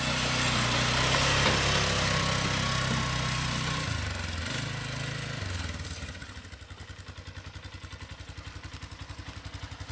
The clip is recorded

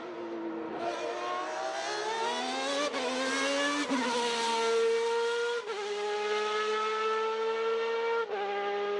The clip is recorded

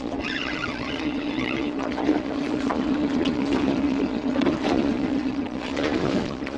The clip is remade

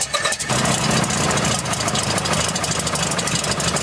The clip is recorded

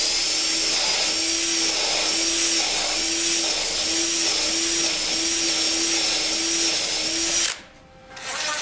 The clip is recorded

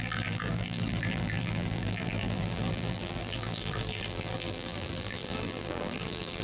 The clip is remade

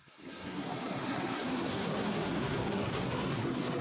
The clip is remade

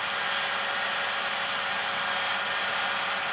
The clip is recorded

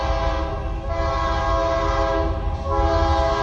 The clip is recorded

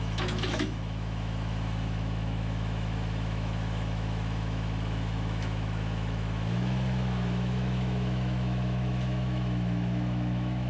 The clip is remade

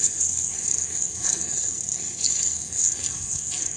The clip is remade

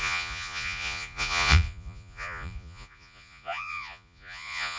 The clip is remade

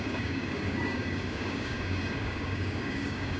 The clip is remade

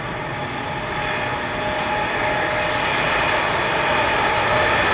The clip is recorded